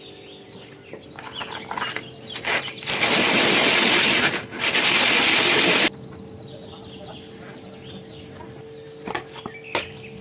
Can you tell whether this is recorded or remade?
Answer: recorded